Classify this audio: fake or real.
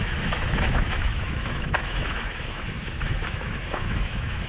fake